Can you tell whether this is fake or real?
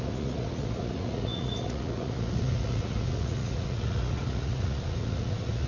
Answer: fake